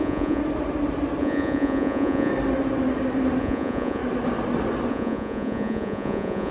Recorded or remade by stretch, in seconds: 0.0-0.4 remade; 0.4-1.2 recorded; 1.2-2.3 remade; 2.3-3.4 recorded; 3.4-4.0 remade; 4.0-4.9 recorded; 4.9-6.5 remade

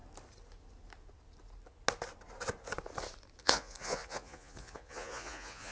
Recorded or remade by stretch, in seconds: 0.0-3.4 recorded; 3.4-5.7 remade

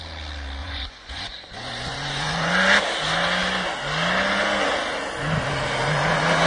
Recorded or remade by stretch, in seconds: 0.0-0.6 recorded; 0.6-2.5 remade; 2.5-6.5 recorded

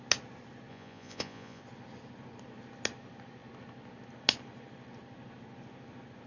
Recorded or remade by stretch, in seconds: 0.0-0.7 recorded; 0.7-1.6 remade; 1.6-6.3 recorded

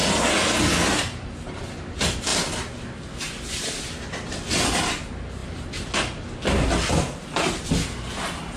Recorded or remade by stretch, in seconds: 0.0-8.6 recorded

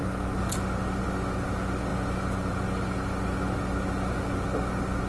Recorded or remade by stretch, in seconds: 0.0-5.1 recorded